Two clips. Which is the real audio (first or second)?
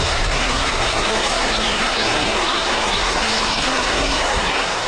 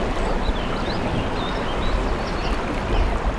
second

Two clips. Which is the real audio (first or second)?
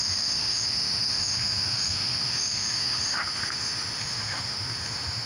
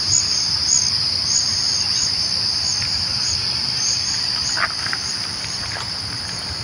second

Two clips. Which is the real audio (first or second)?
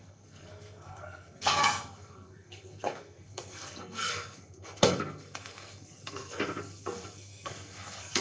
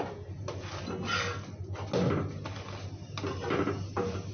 second